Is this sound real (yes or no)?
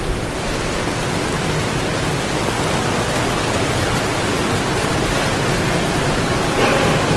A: yes